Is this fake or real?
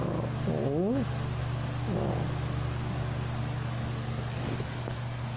real